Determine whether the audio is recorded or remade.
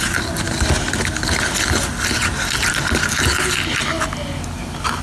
recorded